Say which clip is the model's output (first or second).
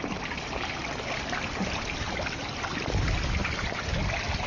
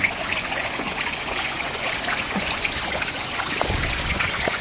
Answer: second